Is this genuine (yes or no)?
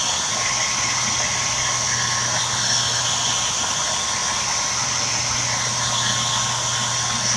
yes